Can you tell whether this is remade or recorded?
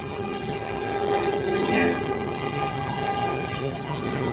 remade